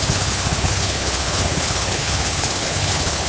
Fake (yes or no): yes